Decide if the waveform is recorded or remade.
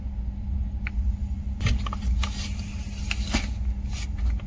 recorded